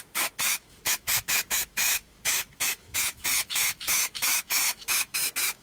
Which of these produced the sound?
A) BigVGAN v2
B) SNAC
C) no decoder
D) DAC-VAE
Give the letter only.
D